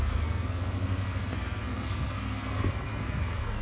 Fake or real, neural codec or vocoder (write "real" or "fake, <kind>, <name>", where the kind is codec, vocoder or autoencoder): fake, codec, SNAC